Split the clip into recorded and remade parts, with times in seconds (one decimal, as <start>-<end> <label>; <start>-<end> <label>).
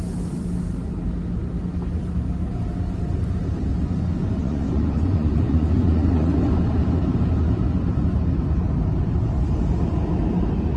0.0-4.4 recorded; 4.4-6.4 remade; 6.4-10.8 recorded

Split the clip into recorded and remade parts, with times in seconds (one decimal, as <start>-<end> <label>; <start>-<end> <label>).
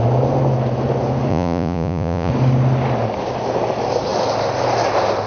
0.0-1.3 recorded; 1.3-2.3 remade; 2.3-5.3 recorded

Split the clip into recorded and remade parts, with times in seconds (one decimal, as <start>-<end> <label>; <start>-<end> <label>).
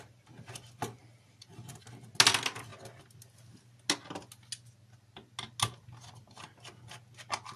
0.0-1.0 recorded; 1.0-1.7 remade; 1.7-7.6 recorded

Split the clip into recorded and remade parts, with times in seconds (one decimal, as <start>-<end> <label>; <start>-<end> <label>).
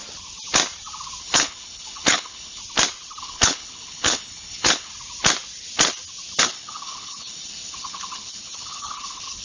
0.0-1.2 recorded; 1.2-2.6 remade; 2.6-3.2 recorded; 3.2-4.9 remade; 4.9-6.4 recorded; 6.4-9.4 remade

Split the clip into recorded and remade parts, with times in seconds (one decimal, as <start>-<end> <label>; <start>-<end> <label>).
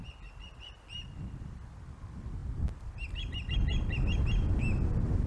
0.0-5.3 recorded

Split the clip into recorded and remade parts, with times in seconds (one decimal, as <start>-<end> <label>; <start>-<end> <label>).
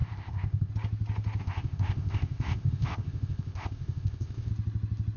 0.0-0.7 remade; 0.7-1.4 recorded; 1.4-4.5 remade; 4.5-5.2 recorded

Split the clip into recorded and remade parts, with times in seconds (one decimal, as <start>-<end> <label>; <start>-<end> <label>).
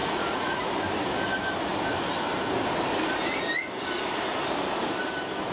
0.0-0.7 remade; 0.7-5.5 recorded